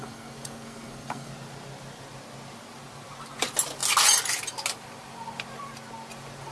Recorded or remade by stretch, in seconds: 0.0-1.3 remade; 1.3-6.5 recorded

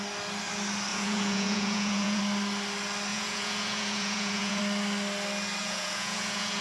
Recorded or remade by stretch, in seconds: 0.0-0.9 recorded; 0.9-2.2 remade; 2.2-3.1 recorded; 3.1-4.6 remade; 4.6-5.6 recorded; 5.6-6.6 remade